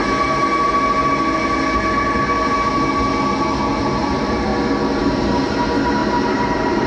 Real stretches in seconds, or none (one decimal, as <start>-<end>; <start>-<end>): 0.0-4.0; 4.5-5.0